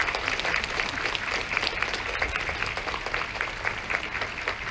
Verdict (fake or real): real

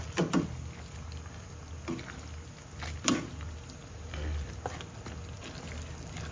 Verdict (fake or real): real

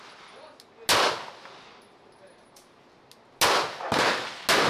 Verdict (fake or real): real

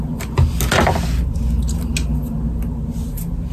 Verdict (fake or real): real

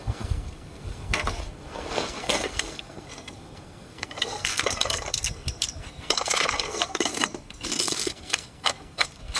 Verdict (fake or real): fake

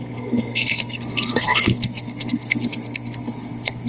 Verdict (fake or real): fake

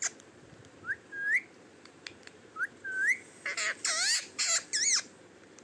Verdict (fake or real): real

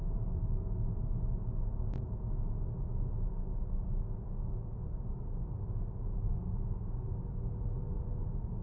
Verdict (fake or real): real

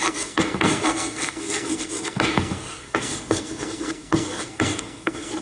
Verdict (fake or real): fake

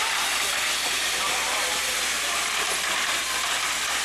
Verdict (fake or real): real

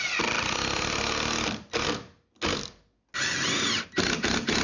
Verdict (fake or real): real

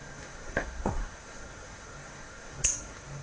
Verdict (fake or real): fake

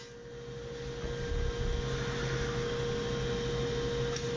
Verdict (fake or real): real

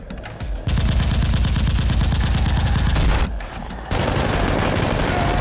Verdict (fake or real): real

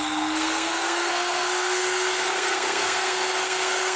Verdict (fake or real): fake